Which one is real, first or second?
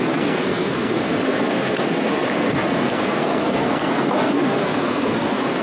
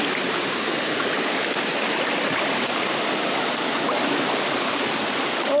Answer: second